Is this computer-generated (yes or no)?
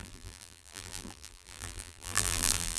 yes